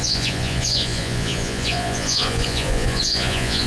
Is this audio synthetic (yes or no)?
yes